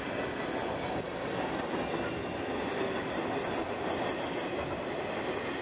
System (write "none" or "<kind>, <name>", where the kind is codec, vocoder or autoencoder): none